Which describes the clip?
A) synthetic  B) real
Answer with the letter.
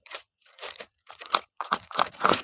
A